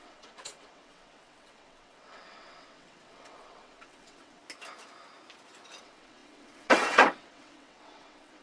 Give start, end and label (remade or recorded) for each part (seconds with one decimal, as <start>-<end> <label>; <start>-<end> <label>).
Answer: 0.0-4.4 remade; 4.4-5.8 recorded; 5.8-8.4 remade